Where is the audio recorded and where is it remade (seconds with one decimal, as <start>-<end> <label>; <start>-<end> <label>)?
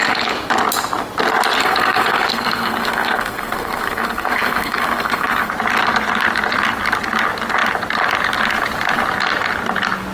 0.0-1.6 recorded; 1.6-5.5 remade; 5.5-10.1 recorded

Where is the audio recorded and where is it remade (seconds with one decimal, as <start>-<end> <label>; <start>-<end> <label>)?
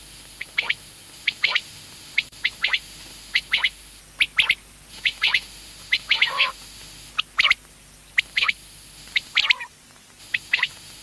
0.0-4.0 remade; 4.0-4.9 recorded; 4.9-7.1 remade; 7.1-8.2 recorded; 8.2-9.4 remade; 9.4-10.2 recorded; 10.2-11.0 remade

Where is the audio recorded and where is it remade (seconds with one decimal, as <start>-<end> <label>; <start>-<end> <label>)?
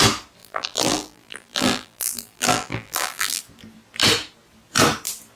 0.0-0.4 recorded; 0.4-3.4 remade; 3.4-5.4 recorded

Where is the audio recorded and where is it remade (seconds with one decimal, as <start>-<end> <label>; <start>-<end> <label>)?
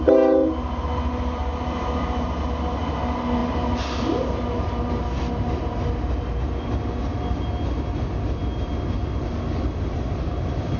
0.0-10.8 recorded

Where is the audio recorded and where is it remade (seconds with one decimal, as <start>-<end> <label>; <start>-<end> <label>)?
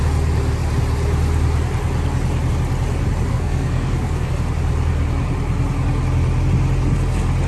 0.0-3.3 recorded; 3.3-4.3 remade; 4.3-7.5 recorded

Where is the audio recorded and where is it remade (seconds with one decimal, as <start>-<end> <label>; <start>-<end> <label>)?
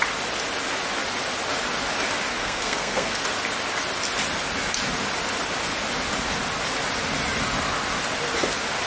0.0-2.4 recorded; 2.4-3.2 remade; 3.2-8.9 recorded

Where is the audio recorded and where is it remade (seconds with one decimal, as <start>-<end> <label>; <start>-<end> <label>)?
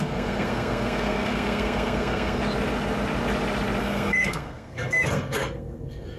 0.0-2.4 remade; 2.4-3.8 recorded; 3.8-6.2 remade